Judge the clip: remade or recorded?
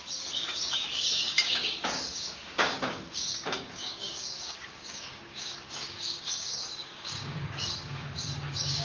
remade